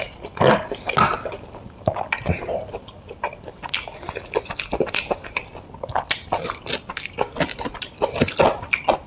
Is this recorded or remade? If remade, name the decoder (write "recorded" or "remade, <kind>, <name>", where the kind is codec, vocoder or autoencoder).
recorded